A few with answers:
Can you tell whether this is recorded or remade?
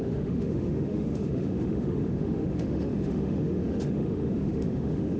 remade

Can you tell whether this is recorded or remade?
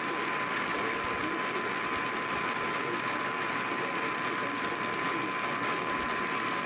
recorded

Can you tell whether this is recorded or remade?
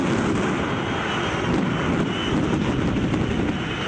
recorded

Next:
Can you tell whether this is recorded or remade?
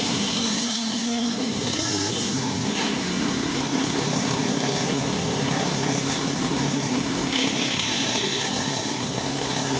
remade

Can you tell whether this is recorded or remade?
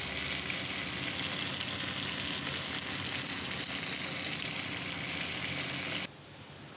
recorded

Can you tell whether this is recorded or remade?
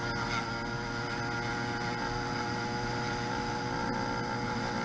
recorded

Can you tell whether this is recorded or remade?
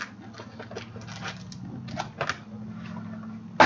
recorded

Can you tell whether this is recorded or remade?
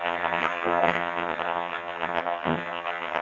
remade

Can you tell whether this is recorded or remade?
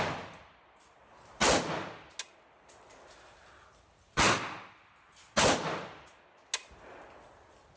recorded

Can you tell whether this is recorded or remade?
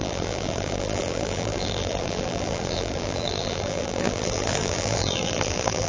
remade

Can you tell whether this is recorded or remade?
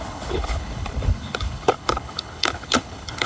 remade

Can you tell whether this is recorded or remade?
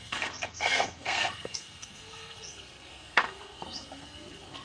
remade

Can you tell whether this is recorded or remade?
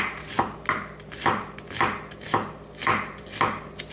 recorded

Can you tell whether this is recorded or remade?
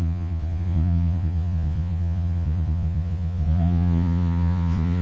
remade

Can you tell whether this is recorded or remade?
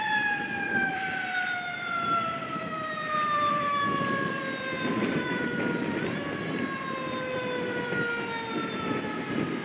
remade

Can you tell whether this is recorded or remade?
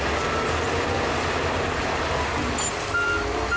recorded